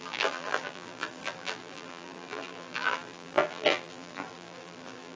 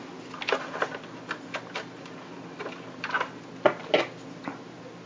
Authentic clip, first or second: second